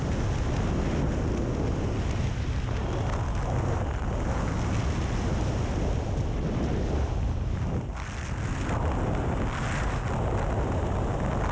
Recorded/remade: recorded